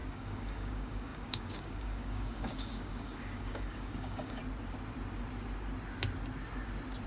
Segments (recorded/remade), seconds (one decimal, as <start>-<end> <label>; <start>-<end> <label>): 0.0-4.4 remade; 4.4-7.1 recorded

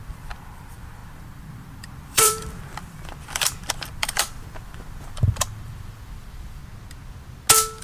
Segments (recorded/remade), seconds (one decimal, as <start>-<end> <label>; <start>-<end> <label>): 0.0-6.6 remade; 6.6-7.8 recorded

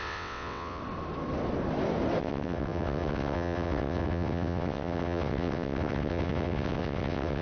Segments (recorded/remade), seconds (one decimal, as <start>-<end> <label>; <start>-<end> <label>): 0.0-0.8 remade; 0.8-2.2 recorded; 2.2-7.4 remade

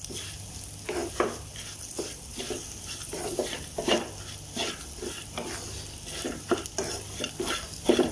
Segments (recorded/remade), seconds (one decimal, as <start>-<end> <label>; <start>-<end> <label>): 0.0-8.1 recorded

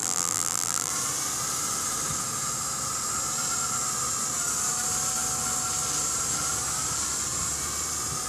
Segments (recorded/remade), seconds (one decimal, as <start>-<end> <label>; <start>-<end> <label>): 0.0-0.9 remade; 0.9-8.3 recorded

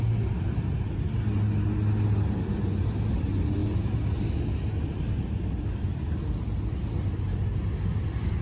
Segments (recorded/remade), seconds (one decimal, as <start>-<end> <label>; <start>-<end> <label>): 0.0-8.4 recorded

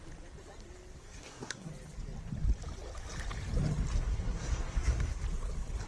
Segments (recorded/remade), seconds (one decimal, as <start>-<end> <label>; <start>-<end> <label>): 0.0-1.0 recorded; 1.0-1.7 remade; 1.7-4.0 recorded; 4.0-5.2 remade; 5.2-5.9 recorded

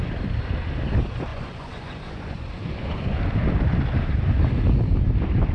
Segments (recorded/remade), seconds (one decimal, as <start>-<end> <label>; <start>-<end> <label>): 0.0-1.3 recorded; 1.3-3.2 remade; 3.2-5.5 recorded